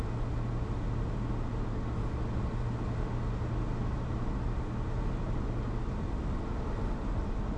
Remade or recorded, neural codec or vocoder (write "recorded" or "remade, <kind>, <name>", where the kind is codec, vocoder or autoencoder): recorded